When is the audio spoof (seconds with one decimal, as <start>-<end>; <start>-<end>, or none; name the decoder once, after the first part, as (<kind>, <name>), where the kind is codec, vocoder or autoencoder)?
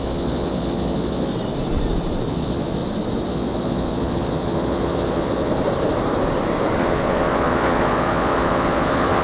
0.0-1.3 (vocoder, Vocos); 2.3-2.8; 3.3-5.5; 6.8-9.2